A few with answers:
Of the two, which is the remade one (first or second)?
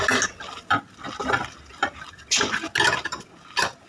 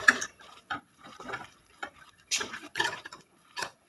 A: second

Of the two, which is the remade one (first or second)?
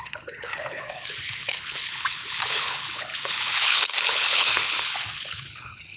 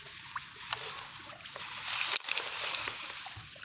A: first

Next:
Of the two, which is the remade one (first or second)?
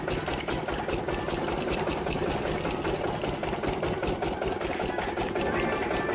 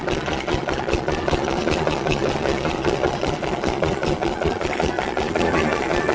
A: second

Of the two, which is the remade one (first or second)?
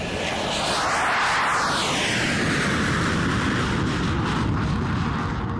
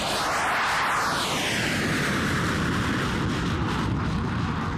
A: second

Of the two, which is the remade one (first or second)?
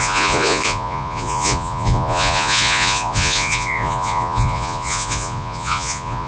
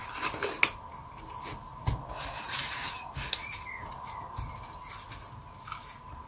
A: first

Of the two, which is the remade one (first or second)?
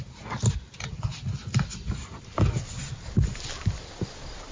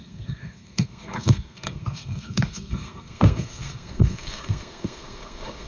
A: second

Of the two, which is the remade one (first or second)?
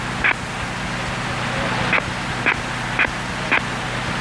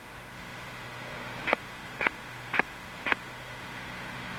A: second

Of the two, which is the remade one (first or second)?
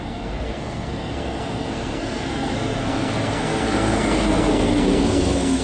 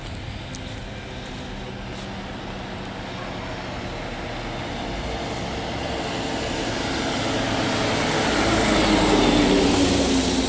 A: first